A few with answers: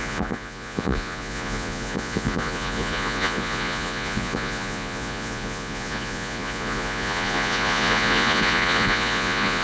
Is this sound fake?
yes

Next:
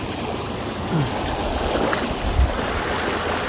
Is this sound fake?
no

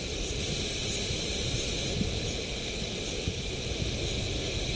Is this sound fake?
no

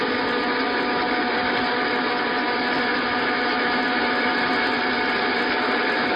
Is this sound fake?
no